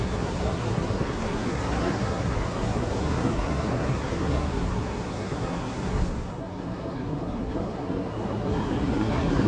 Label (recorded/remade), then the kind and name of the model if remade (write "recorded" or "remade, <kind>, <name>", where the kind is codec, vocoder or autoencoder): remade, codec, SNAC